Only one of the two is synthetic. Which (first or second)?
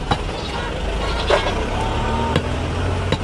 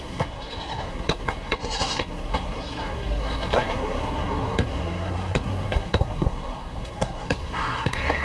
second